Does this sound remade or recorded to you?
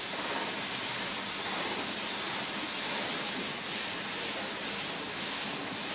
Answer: recorded